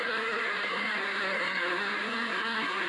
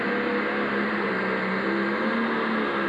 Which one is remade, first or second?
first